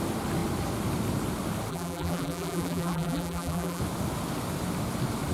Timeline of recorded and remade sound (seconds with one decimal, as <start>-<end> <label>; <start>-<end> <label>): 0.0-1.7 recorded; 1.7-3.8 remade; 3.8-5.3 recorded